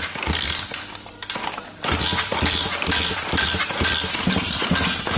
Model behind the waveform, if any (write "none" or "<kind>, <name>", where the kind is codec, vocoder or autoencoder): none